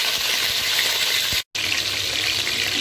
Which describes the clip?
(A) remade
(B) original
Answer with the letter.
B